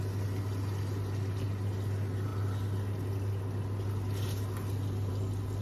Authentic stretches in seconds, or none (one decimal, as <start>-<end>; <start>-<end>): 0.0-5.6